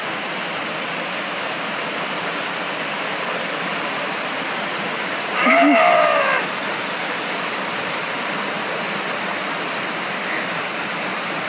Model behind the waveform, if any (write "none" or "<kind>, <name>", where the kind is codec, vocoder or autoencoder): none